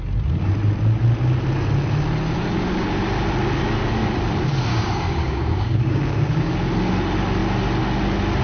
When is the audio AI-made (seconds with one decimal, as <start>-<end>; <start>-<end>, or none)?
4.7-6.5